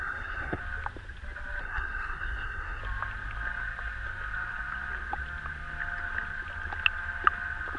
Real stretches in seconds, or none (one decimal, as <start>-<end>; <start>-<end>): 0.6-1.6; 2.8-7.8